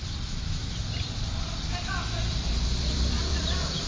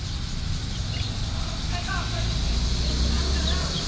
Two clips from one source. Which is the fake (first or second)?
first